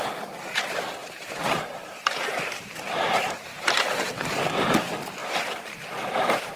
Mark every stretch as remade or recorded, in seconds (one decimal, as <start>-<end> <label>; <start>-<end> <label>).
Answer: 0.0-1.0 recorded; 1.0-4.4 remade; 4.4-5.2 recorded; 5.2-6.6 remade